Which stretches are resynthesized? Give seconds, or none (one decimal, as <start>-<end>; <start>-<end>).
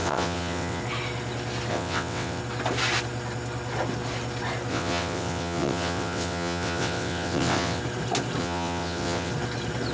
0.0-0.8; 1.7-2.4; 4.7-7.8; 8.4-9.3